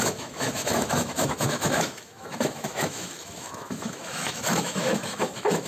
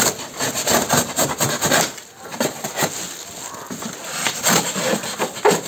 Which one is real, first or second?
second